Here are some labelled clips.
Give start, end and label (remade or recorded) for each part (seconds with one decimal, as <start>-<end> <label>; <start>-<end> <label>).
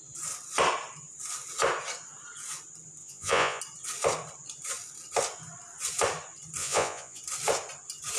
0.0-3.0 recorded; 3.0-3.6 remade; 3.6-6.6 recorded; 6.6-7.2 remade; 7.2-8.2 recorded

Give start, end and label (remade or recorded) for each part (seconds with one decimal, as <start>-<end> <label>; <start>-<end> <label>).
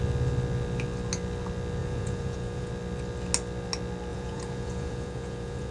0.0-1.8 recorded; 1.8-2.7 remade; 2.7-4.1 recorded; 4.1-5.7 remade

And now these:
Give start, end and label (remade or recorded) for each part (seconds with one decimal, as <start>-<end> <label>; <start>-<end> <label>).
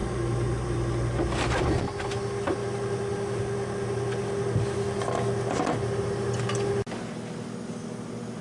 0.0-8.4 recorded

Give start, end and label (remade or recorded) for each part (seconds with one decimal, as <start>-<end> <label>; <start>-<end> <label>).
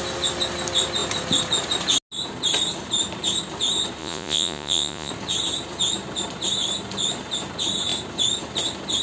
0.0-4.0 recorded; 4.0-5.1 remade; 5.1-9.0 recorded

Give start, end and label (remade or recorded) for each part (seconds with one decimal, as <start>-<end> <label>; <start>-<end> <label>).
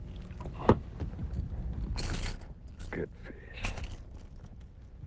0.0-3.2 recorded; 3.2-3.8 remade; 3.8-5.1 recorded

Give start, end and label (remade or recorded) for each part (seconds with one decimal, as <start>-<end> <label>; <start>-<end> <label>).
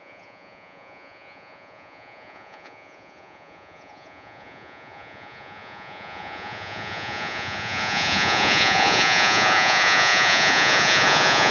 0.0-11.5 remade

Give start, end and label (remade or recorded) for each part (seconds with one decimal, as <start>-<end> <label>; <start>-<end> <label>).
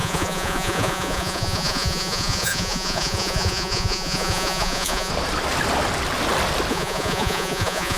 0.0-5.1 remade; 5.1-6.7 recorded; 6.7-8.0 remade